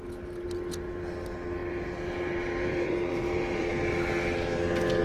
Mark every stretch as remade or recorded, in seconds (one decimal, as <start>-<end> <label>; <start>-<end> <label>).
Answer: 0.0-1.6 recorded; 1.6-3.7 remade; 3.7-5.0 recorded